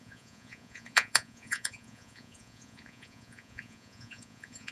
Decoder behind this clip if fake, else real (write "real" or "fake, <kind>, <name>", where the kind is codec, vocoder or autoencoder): fake, vocoder, Vocos